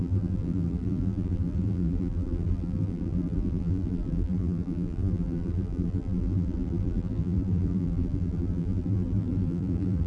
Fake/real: fake